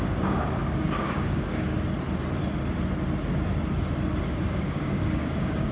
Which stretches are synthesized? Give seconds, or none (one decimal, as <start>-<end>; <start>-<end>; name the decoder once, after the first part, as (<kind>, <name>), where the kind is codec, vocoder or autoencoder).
0.0-1.7 (codec, DAC); 4.2-5.7